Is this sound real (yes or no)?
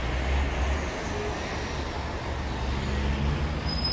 yes